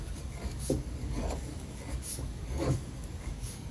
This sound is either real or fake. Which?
fake